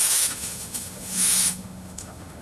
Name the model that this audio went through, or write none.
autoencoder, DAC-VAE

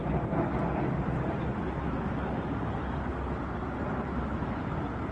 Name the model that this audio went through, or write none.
none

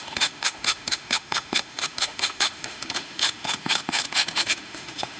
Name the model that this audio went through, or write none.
autoencoder, DAC-VAE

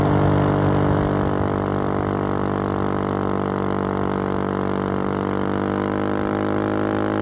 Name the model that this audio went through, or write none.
none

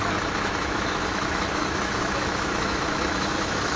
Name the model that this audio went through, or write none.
autoencoder, DAC-VAE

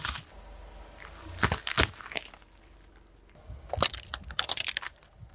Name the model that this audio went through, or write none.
none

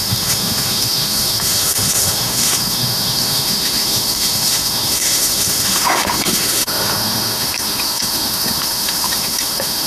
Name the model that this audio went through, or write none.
autoencoder, DAC-VAE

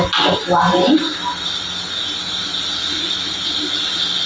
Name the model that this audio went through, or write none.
none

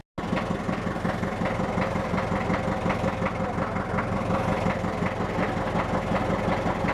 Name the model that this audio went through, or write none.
none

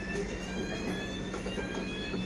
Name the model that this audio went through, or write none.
autoencoder, DAC-VAE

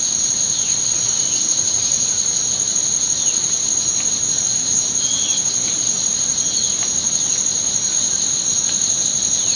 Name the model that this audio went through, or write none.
none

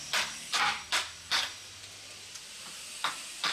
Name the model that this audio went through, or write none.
none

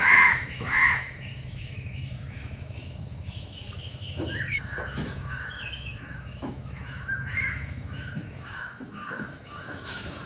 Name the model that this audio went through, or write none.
autoencoder, DAC-VAE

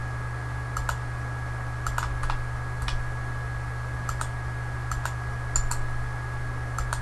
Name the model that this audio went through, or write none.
none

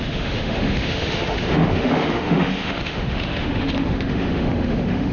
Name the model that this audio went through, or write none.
autoencoder, DAC-VAE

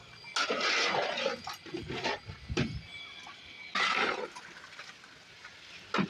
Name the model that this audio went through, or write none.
none